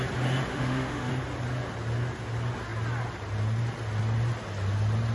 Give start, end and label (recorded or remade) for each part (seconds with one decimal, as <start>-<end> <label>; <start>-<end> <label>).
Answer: 0.0-0.5 recorded; 0.5-1.1 remade; 1.1-5.1 recorded